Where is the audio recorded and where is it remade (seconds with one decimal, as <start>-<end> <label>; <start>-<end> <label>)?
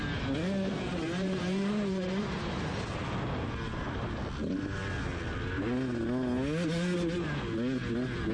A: 0.0-0.7 recorded; 0.7-3.0 remade; 3.0-8.3 recorded